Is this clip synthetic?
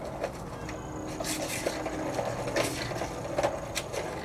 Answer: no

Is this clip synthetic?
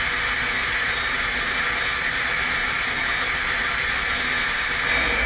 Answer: no